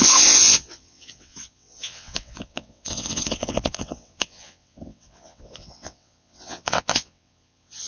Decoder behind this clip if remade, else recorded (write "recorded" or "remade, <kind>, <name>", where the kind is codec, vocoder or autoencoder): remade, vocoder, WaveNeXt